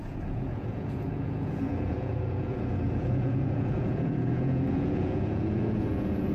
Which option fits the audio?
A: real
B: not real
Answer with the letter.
B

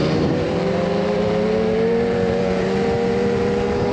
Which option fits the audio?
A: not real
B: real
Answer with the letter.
A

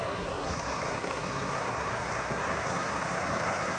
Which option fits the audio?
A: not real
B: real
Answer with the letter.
A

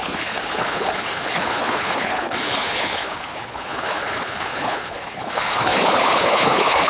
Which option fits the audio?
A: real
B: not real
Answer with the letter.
B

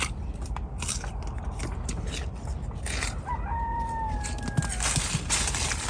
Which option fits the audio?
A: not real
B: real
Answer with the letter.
B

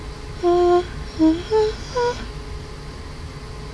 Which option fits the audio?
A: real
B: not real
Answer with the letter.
A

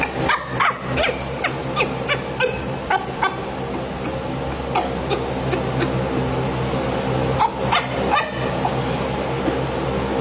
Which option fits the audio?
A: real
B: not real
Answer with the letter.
A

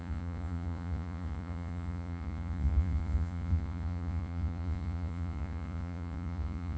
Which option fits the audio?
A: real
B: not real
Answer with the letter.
B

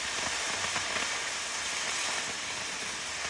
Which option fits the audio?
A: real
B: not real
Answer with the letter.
A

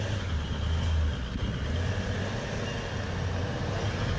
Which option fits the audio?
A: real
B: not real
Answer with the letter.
A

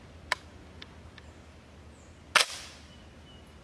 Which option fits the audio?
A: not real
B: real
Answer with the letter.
B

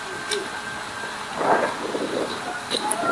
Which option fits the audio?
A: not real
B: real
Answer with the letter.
B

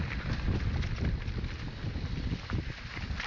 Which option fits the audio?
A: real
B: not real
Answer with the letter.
A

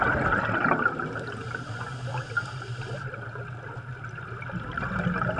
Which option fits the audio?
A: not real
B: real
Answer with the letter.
B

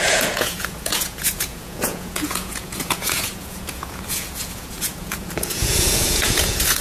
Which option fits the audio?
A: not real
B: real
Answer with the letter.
A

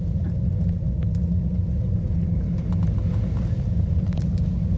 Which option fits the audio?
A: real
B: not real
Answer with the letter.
A